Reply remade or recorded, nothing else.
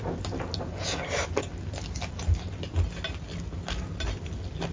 recorded